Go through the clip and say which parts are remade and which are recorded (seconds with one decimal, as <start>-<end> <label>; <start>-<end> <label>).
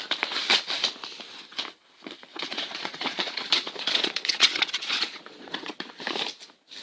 0.0-2.3 recorded; 2.3-6.0 remade; 6.0-6.8 recorded